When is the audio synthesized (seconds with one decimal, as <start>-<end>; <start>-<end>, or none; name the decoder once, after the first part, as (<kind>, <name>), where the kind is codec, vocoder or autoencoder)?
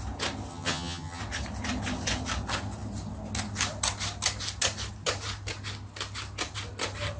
0.5-1.2 (vocoder, HiFi-GAN)